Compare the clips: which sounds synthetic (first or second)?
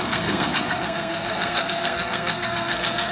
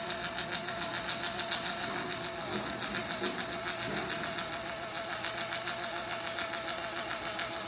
first